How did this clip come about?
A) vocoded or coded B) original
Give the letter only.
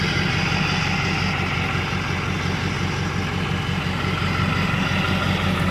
B